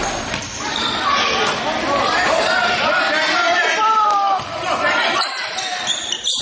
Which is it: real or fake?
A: fake